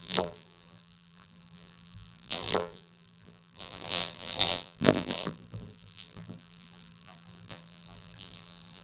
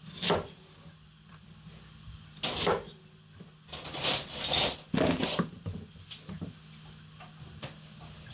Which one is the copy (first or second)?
first